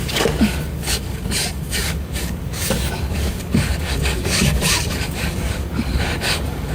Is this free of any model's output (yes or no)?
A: no